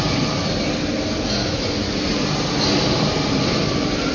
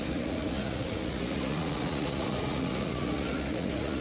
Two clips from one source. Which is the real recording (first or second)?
first